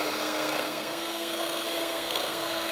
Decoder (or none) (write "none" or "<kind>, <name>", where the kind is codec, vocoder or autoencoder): codec, SNAC